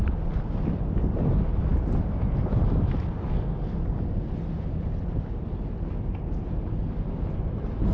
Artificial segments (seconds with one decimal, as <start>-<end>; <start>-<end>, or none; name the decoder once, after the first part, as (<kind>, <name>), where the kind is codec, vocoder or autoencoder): none